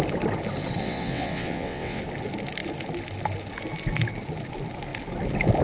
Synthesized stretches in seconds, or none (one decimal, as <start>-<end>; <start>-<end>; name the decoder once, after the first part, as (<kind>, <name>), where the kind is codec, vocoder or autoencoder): 0.8-2.0 (vocoder, WaveNeXt)